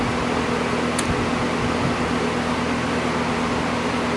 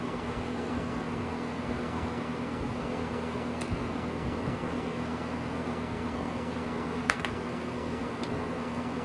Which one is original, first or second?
first